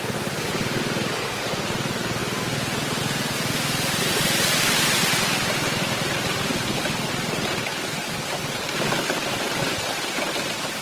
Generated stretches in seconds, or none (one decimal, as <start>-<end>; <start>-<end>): none